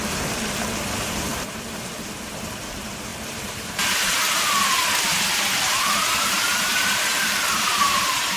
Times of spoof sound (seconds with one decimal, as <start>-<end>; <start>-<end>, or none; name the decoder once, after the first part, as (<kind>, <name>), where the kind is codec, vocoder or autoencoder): 0.0-8.4 (vocoder, BigVGAN v2)